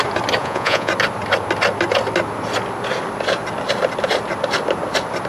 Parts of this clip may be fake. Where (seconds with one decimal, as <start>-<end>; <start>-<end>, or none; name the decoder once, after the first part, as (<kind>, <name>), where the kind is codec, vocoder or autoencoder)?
0.4-0.9 (vocoder, Vocos)